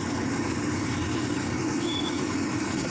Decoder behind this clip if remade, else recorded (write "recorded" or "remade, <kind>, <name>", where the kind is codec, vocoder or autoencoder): remade, codec, DAC